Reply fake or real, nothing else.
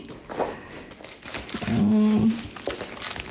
real